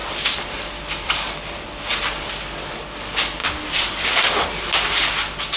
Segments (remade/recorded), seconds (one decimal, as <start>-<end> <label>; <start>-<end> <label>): 0.0-2.3 remade; 2.3-3.4 recorded; 3.4-4.4 remade; 4.4-5.6 recorded

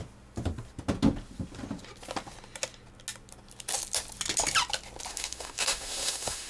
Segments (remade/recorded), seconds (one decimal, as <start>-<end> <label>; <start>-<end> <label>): 0.0-5.1 recorded; 5.1-6.5 remade

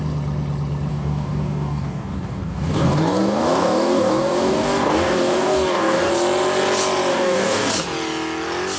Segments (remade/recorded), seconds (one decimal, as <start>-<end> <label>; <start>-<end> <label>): 0.0-0.9 recorded; 0.9-6.1 remade; 6.1-7.1 recorded; 7.1-7.7 remade; 7.7-8.8 recorded

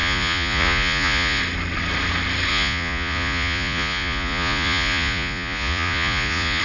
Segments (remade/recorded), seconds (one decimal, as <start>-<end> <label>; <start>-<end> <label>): 0.0-1.4 remade; 1.4-2.5 recorded; 2.5-6.6 remade

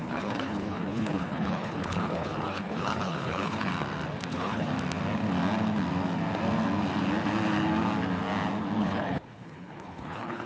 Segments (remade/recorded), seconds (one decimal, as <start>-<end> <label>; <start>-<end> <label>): 0.0-3.7 remade; 3.7-4.3 recorded; 4.3-4.7 remade; 4.7-8.8 recorded; 8.8-10.5 remade

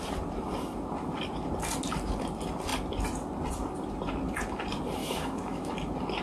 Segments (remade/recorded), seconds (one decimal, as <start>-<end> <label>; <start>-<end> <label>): 0.0-5.0 recorded; 5.0-5.7 remade; 5.7-6.2 recorded

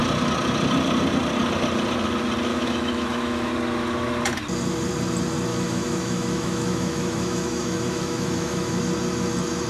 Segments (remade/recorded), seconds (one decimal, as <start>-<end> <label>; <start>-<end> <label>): 0.0-2.5 recorded; 2.5-3.5 remade; 3.5-5.5 recorded; 5.5-8.8 remade; 8.8-9.7 recorded